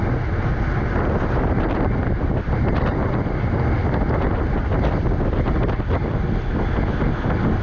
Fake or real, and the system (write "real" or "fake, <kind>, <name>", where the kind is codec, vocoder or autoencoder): real